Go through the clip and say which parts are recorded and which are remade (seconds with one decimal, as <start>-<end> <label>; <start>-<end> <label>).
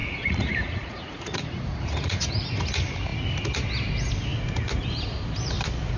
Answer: 0.0-2.3 remade; 2.3-6.0 recorded